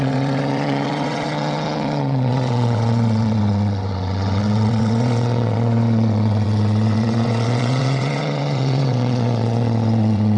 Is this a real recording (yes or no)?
no